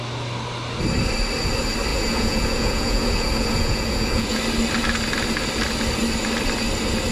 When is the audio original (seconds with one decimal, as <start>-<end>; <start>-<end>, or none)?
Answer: 0.0-1.9; 4.4-7.1